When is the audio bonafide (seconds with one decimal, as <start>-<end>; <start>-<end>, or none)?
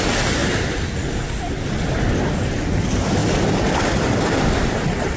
0.0-3.2